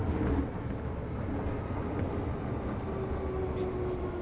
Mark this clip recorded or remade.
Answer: recorded